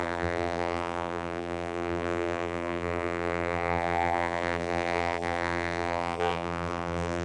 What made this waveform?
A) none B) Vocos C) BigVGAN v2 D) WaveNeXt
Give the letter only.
C